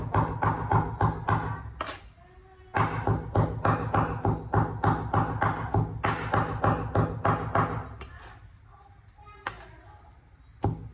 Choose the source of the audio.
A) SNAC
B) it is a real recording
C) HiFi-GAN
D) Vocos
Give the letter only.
B